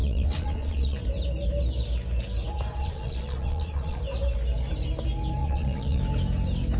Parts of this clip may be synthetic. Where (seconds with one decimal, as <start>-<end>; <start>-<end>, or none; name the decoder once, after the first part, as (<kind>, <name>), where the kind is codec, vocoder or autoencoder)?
0.0-1.0 (vocoder, Vocos); 2.8-4.0; 5.4-6.0